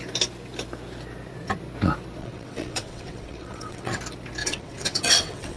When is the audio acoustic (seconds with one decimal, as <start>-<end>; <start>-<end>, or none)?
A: 0.0-2.2; 4.0-4.4